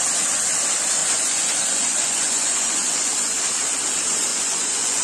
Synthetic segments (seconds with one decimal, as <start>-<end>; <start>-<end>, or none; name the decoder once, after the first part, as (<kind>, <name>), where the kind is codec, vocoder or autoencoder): 1.0-3.4 (vocoder, Vocos); 4.3-5.0